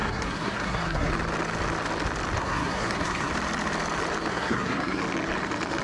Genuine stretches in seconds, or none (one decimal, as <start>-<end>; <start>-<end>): 1.1-2.4; 3.3-4.3; 5.0-5.8